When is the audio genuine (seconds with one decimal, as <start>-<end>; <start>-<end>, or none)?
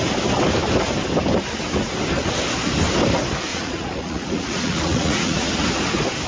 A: 0.0-3.5; 5.5-6.3